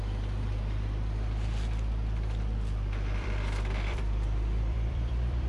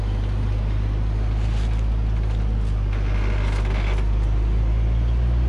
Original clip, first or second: second